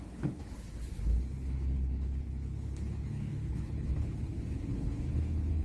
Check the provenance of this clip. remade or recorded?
remade